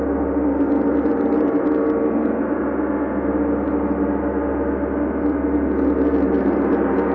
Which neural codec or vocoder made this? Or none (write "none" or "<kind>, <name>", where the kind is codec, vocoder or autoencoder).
none